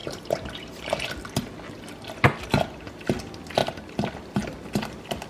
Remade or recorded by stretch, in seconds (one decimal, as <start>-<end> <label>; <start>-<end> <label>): 0.0-0.9 remade; 0.9-3.6 recorded; 3.6-4.1 remade; 4.1-5.3 recorded